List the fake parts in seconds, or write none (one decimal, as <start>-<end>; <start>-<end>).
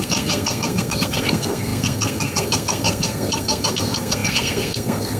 0.0-5.2